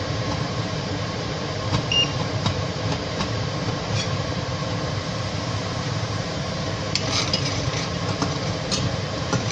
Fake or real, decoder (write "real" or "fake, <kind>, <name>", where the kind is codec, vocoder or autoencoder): fake, vocoder, BigVGAN v2